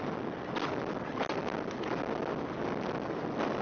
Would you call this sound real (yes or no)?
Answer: yes